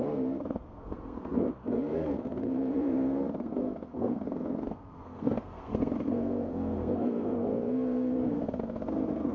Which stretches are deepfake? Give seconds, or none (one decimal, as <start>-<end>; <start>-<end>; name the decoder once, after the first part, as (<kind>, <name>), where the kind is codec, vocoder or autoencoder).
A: 0.0-9.3 (codec, SNAC)